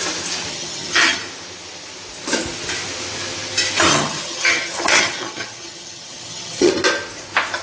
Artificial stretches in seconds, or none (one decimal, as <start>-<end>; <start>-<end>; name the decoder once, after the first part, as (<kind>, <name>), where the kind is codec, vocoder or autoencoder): 0.5-1.2 (vocoder, HiFi-GAN); 3.9-6.7